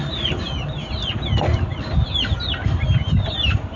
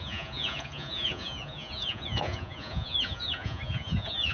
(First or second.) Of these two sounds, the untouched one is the first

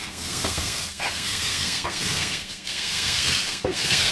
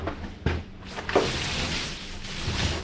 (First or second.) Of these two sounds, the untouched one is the second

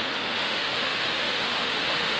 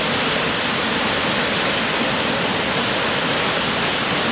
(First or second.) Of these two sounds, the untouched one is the second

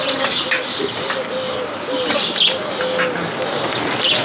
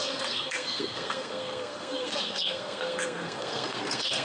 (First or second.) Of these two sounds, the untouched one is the first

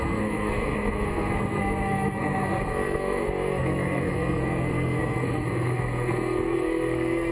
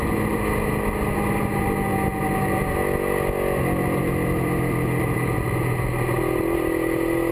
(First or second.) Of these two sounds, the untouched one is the second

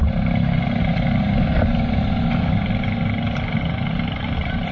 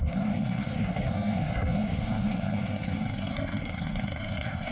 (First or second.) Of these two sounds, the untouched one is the first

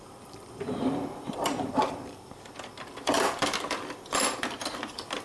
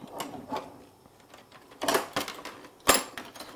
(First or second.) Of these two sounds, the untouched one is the second